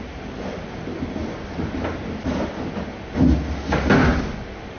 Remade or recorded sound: recorded